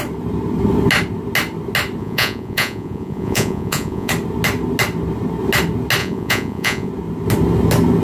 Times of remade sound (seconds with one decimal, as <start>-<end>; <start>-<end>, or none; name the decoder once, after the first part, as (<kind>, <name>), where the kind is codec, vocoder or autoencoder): 2.0-4.1 (vocoder, Vocos); 6.0-6.9